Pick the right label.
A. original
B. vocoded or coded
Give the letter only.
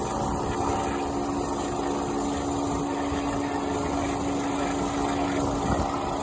A